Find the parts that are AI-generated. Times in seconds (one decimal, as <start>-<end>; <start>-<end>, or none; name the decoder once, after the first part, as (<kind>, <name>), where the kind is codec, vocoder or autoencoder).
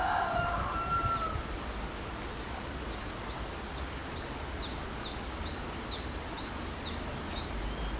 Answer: none